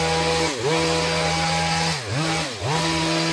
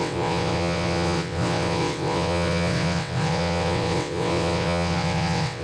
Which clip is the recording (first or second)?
first